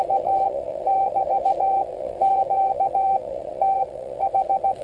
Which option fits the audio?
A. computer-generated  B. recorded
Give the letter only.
A